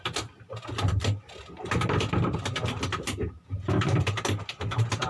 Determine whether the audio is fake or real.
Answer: real